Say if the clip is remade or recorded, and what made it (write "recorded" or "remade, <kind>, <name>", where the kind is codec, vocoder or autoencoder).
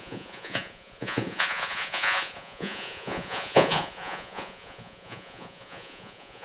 remade, vocoder, Vocos